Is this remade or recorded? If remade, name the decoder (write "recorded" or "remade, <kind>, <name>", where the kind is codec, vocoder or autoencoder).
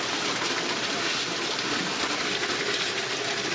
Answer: recorded